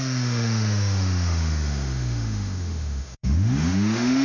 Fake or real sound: fake